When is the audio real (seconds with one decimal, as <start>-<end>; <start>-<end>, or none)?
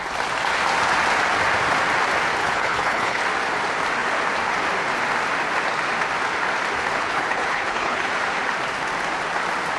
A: 0.0-2.4; 3.2-7.0; 8.1-9.8